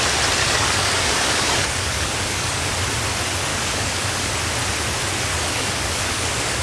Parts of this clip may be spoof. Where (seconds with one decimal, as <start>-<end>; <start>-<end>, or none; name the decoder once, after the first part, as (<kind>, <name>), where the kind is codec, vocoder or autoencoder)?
0.4-2.7 (codec, DAC); 3.5-4.3; 5.3-6.6